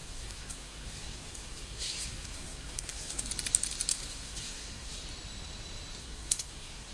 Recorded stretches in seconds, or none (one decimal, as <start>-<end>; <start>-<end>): 3.3-3.9; 5.0-6.0